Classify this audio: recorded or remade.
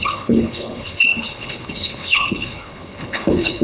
remade